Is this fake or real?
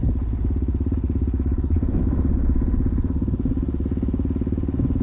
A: real